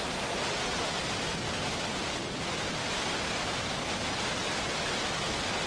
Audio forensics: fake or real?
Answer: real